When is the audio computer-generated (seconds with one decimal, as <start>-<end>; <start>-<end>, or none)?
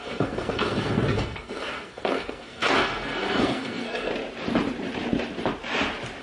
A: 0.0-4.1